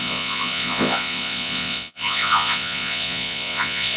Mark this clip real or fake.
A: fake